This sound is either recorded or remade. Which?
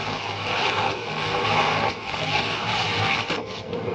remade